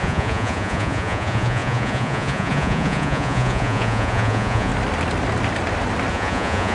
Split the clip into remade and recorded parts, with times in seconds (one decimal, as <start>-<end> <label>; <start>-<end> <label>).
0.0-4.7 remade; 4.7-6.1 recorded; 6.1-6.7 remade